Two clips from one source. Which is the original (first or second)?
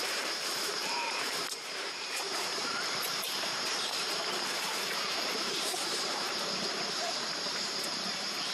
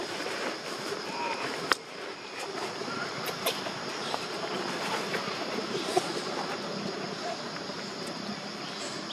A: second